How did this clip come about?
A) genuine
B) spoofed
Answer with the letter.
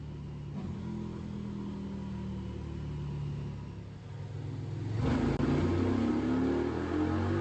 A